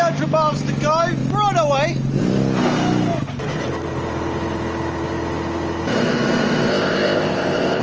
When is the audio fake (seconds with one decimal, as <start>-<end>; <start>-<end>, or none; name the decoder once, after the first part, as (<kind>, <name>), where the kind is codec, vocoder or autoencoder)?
6.7-7.8 (codec, ZipCodec)